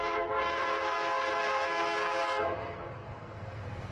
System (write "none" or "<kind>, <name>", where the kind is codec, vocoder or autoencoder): codec, SNAC